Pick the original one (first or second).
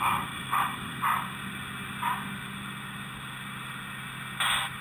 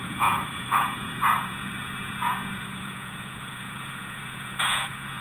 first